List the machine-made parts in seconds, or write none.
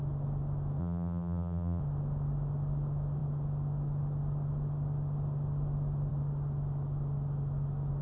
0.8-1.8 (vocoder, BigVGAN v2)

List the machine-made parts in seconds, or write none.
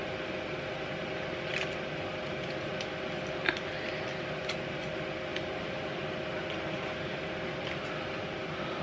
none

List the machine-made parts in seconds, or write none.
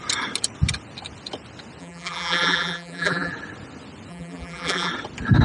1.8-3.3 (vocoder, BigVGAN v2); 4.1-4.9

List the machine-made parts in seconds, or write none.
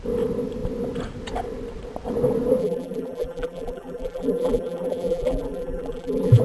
2.6-6.4 (vocoder, BigVGAN v2)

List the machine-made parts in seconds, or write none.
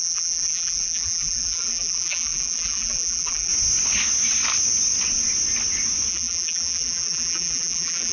0.0-3.5 (vocoder, BigVGAN v2); 6.1-8.1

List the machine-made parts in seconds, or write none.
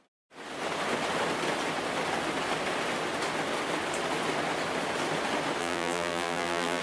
5.6-6.8 (vocoder, BigVGAN v2)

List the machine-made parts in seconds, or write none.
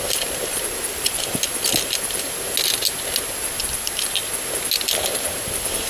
0.8-1.4 (vocoder, BigVGAN v2)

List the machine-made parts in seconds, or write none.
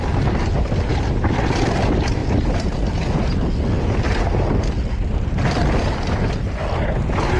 0.9-1.7 (vocoder, BigVGAN v2)